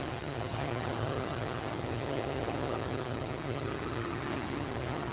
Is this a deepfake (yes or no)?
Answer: yes